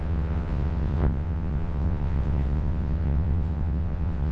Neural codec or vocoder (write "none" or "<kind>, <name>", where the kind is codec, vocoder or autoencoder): vocoder, WaveNeXt